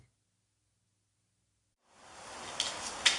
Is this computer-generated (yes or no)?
no